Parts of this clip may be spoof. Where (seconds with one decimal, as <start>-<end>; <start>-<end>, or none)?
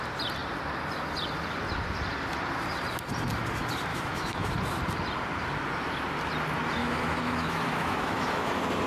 3.9-4.5; 6.8-8.5